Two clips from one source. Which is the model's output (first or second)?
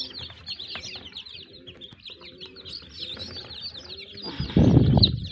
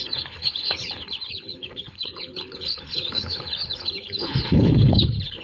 second